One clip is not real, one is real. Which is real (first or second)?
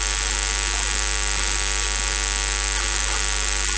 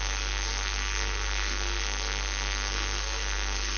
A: first